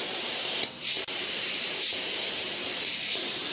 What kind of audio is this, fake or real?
fake